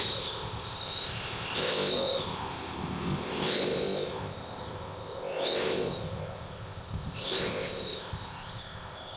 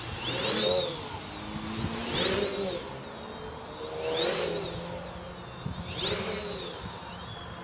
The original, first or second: second